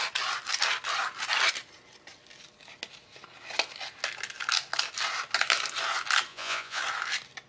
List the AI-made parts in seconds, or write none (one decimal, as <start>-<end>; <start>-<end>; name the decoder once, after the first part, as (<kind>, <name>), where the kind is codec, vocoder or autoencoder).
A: 6.3-6.8 (vocoder, Vocos)